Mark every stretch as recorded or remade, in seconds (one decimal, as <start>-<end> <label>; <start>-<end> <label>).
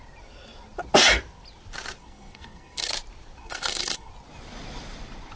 0.0-2.0 recorded; 2.0-2.9 remade; 2.9-3.4 recorded; 3.4-4.1 remade; 4.1-5.4 recorded